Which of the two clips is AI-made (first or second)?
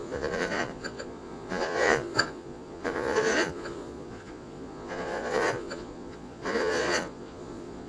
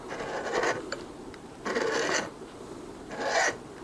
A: first